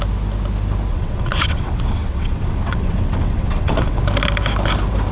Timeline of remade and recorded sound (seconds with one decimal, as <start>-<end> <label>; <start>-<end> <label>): 0.0-0.9 recorded; 0.9-4.0 remade; 4.0-5.1 recorded